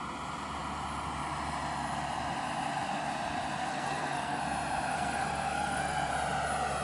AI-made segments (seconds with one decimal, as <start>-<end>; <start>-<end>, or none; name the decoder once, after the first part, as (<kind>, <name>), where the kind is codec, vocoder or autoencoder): 3.7-4.4 (codec, SNAC); 4.9-6.1